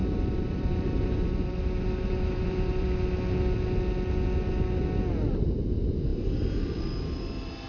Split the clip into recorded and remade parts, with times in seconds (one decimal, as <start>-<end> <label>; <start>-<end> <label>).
0.0-2.9 remade; 2.9-7.7 recorded